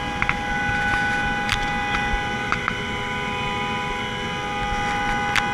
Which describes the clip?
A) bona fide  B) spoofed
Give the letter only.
A